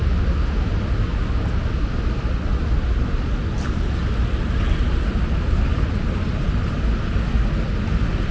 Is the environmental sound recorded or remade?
recorded